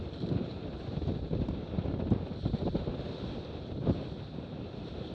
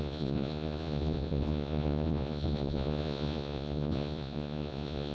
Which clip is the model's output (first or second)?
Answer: second